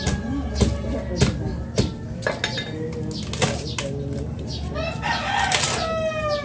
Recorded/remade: recorded